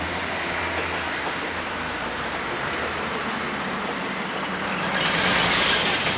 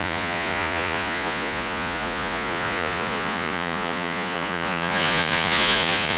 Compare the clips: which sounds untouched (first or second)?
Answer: first